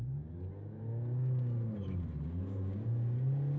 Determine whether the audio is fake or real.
real